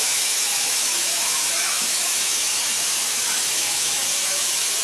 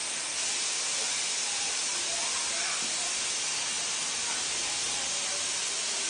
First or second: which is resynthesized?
first